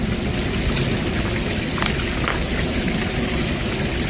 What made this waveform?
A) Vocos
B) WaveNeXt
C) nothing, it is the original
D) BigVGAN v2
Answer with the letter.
C